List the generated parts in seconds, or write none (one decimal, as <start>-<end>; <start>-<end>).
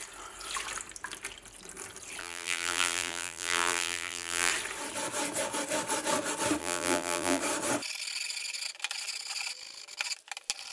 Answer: 2.2-4.5; 6.6-7.4